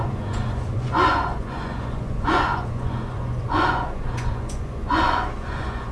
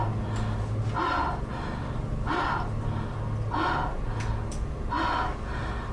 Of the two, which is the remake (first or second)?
first